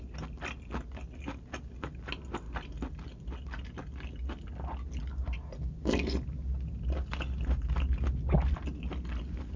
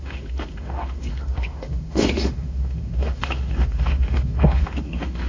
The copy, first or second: second